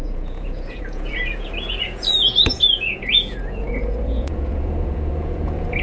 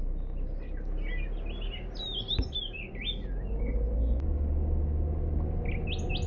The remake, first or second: first